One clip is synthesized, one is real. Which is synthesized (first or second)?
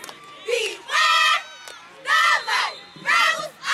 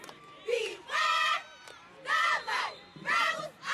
second